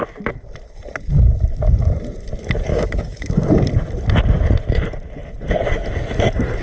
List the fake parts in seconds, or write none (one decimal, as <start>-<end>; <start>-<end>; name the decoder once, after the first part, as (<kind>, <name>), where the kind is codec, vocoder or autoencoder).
2.7-3.5 (codec, DAC)